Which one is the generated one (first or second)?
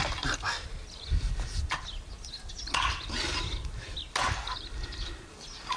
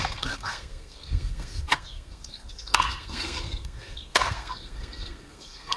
second